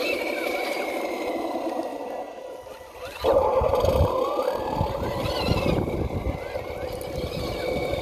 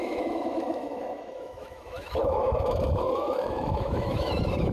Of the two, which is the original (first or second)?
first